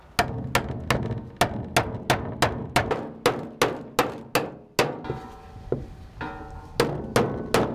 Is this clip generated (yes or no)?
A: no